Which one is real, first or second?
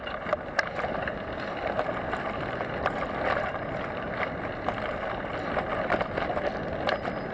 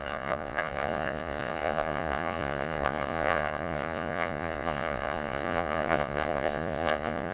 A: first